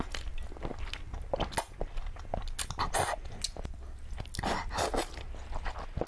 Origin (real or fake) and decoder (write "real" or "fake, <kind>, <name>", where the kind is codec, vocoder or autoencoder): real